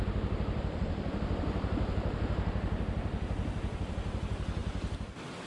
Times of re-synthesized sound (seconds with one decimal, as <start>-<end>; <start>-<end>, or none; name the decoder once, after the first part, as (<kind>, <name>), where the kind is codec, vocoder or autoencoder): 0.0-4.6 (vocoder, BigVGAN v2)